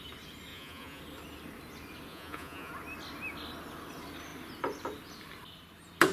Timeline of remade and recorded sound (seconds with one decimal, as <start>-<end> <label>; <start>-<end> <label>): 0.0-0.5 recorded; 0.5-1.0 remade; 1.0-2.1 recorded; 2.1-2.7 remade; 2.7-6.1 recorded